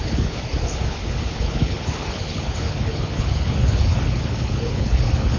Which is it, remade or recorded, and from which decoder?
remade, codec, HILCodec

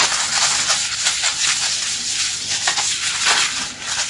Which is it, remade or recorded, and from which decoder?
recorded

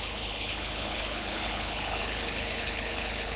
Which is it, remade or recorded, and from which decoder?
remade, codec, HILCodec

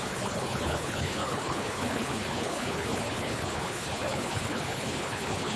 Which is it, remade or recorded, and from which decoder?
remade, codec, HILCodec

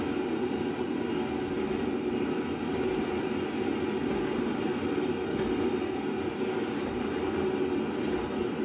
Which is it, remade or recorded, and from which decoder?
recorded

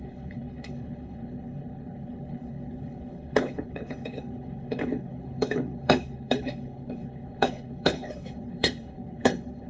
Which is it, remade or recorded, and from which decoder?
remade, codec, HILCodec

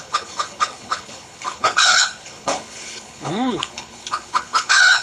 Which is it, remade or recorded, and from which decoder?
remade, codec, HILCodec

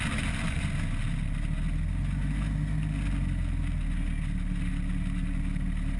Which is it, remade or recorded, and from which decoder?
recorded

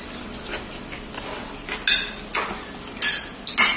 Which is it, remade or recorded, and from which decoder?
recorded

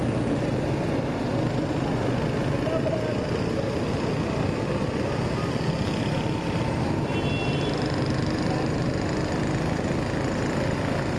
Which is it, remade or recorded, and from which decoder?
recorded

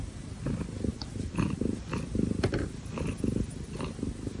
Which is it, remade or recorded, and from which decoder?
recorded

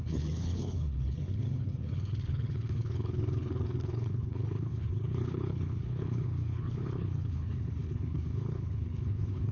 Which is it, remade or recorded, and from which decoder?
remade, codec, HILCodec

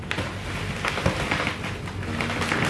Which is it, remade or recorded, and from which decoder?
recorded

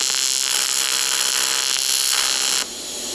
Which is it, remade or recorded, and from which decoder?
recorded